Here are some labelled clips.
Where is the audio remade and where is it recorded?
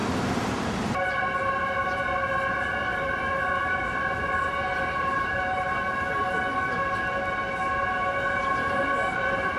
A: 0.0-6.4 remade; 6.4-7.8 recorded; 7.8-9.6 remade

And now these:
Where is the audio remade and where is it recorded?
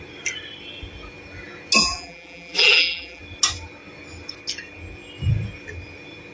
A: 0.0-1.8 recorded; 1.8-3.2 remade; 3.2-6.3 recorded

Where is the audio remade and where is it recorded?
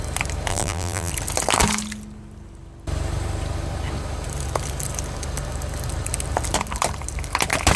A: 0.0-0.5 recorded; 0.5-1.1 remade; 1.1-7.8 recorded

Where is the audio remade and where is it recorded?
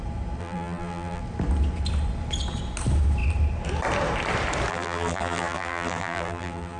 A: 0.0-0.4 recorded; 0.4-1.2 remade; 1.2-4.7 recorded; 4.7-6.8 remade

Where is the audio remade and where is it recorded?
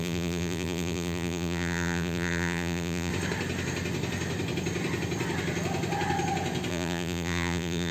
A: 0.0-3.1 remade; 3.1-6.7 recorded; 6.7-7.9 remade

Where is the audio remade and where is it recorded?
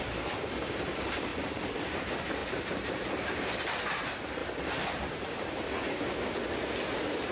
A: 0.0-1.3 recorded; 1.3-2.0 remade; 2.0-2.4 recorded; 2.4-3.6 remade; 3.6-4.4 recorded; 4.4-5.6 remade; 5.6-7.3 recorded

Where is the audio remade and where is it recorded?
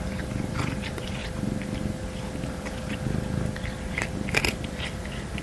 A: 0.0-1.2 remade; 1.2-4.4 recorded; 4.4-5.4 remade